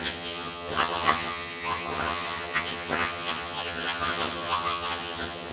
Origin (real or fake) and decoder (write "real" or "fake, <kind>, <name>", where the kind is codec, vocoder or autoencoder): fake, vocoder, HiFi-GAN